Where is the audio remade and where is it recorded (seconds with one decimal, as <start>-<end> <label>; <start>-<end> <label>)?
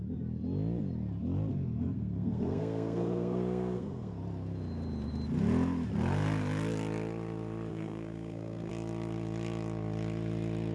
0.0-1.5 recorded; 1.5-4.2 remade; 4.2-7.7 recorded; 7.7-8.7 remade; 8.7-10.7 recorded